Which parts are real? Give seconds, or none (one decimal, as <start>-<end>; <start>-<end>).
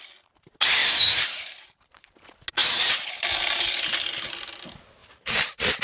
0.0-0.8; 2.2-2.6; 3.8-5.0